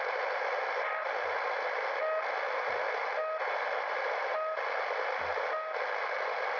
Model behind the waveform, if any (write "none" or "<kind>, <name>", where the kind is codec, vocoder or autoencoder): none